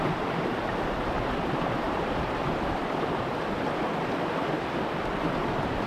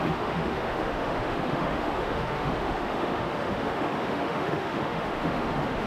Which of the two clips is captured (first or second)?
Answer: first